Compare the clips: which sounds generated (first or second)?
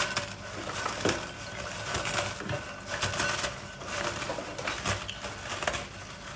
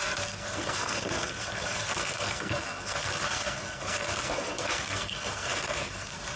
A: second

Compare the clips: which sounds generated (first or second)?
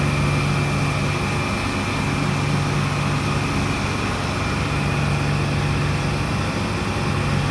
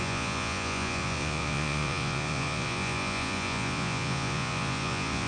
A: second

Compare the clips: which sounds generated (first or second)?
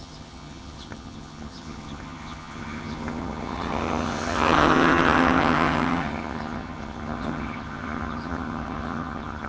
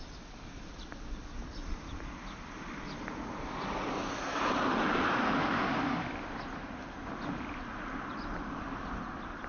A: first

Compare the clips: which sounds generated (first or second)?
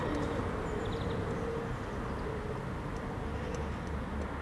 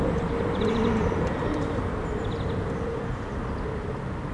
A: second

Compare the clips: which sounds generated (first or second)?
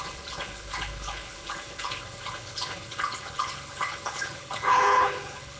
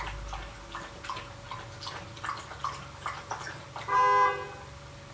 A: first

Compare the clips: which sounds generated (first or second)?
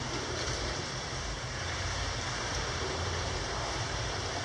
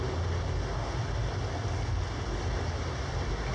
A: first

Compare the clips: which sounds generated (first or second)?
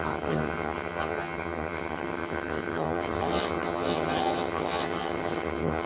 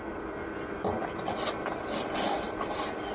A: first